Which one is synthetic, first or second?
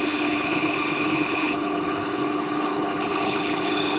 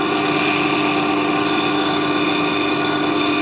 first